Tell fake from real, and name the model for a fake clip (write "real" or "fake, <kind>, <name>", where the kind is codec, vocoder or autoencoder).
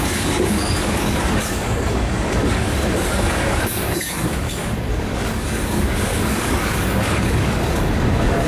fake, codec, DAC